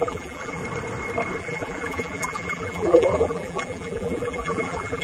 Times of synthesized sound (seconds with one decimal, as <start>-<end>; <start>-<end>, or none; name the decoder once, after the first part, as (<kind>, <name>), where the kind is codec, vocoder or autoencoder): 0.0-0.6 (vocoder, BigVGAN v2); 1.4-5.0